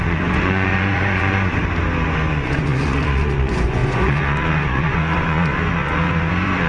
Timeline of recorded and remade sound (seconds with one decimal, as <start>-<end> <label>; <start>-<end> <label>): 0.0-1.6 remade; 1.6-2.3 recorded; 2.3-6.7 remade